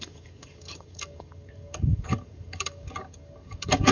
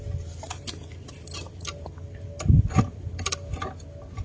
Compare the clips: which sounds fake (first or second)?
first